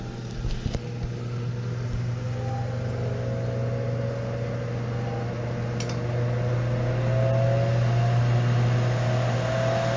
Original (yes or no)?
yes